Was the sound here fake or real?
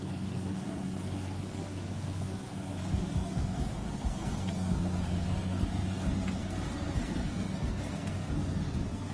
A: fake